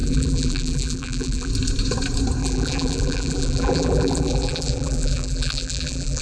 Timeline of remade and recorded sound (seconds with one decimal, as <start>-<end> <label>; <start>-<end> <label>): 0.0-1.5 remade; 1.5-2.4 recorded; 2.4-6.2 remade